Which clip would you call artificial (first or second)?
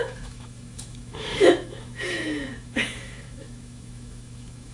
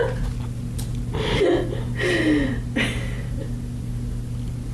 first